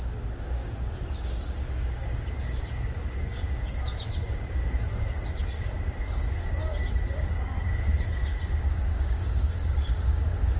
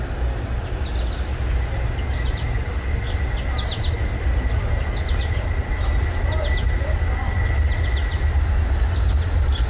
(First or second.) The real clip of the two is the second